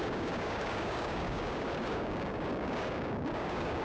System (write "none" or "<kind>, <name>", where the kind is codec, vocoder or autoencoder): codec, DAC